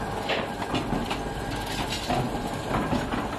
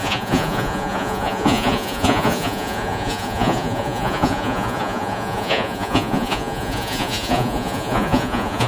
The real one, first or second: first